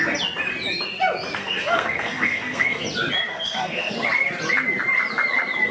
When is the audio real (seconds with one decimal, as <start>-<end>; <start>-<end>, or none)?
0.0-1.4; 2.8-3.3; 3.9-5.7

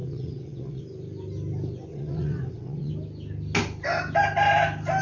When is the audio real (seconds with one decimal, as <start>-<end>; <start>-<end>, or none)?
0.8-1.9; 2.9-5.0